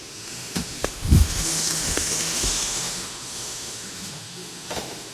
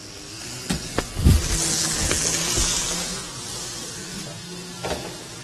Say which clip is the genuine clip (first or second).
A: second